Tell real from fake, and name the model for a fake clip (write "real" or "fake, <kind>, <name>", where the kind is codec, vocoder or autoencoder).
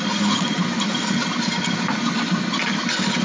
real